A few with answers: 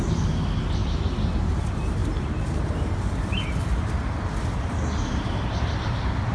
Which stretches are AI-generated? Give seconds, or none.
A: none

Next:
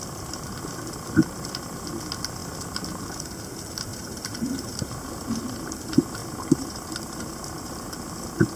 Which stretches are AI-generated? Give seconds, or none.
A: 3.9-5.4; 6.2-6.9

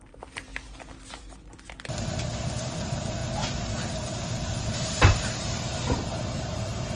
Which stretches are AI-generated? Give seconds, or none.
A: 0.0-0.5; 2.3-3.2; 4.6-7.0

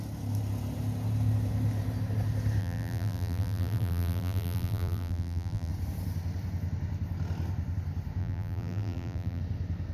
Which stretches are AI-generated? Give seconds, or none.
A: 2.6-5.7; 8.2-9.4

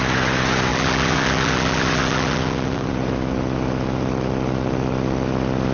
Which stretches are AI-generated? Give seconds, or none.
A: 0.7-2.9

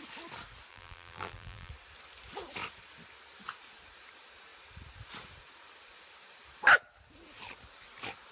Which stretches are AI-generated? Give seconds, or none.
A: 0.7-1.7

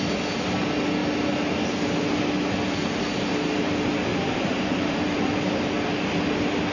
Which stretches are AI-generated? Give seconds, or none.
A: 4.1-5.3